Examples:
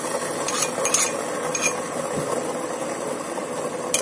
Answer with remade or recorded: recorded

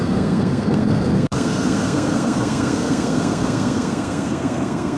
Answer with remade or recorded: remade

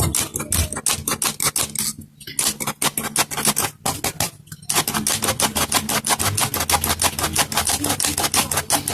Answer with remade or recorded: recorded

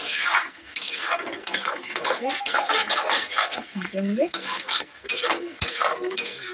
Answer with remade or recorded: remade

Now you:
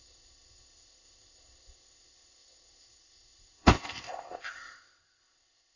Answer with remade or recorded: remade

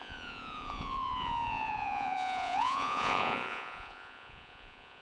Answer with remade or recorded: remade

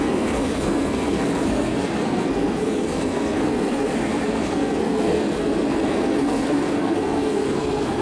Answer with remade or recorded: remade